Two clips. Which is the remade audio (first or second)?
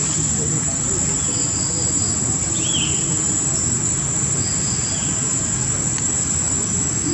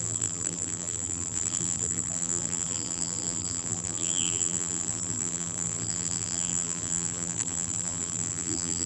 second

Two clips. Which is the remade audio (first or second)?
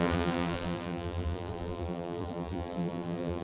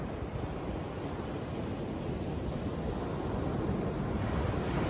first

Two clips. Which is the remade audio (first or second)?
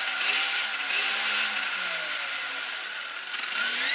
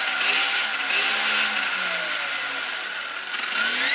first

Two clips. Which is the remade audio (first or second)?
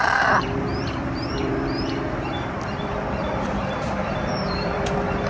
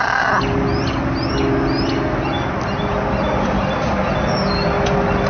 first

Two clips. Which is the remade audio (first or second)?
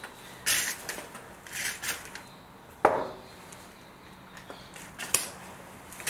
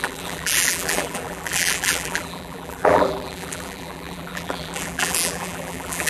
second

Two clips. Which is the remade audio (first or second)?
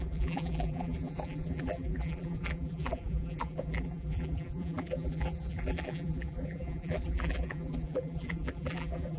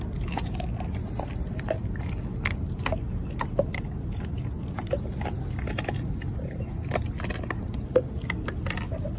first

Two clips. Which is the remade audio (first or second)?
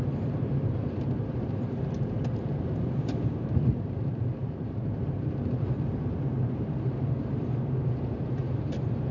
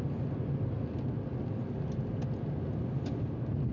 first